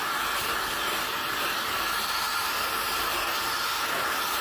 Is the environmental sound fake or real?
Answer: real